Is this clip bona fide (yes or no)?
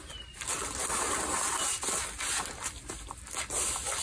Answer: yes